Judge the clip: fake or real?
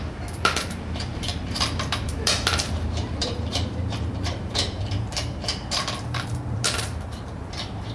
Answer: fake